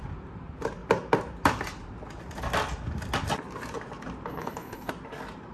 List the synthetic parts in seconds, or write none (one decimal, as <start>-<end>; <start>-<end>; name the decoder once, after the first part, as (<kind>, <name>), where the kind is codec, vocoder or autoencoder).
4.3-4.9 (codec, HILCodec)